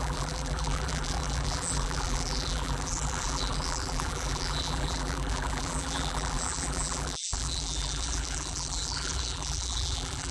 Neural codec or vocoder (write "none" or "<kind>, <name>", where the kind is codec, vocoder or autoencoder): vocoder, BigVGAN v2